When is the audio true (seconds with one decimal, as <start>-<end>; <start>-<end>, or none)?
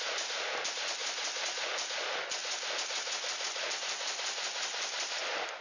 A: 0.0-1.0; 1.6-2.4; 3.7-5.6